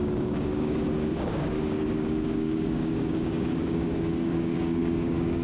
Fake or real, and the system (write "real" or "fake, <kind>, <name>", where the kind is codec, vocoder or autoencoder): fake, codec, DAC